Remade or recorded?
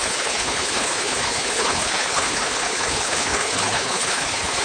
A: remade